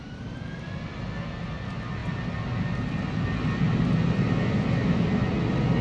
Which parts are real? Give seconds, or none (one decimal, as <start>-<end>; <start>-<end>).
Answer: 0.0-5.8